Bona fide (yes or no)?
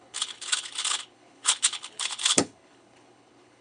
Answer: no